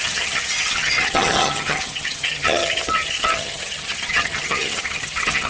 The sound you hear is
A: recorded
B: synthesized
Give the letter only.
B